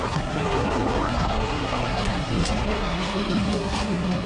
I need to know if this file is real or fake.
fake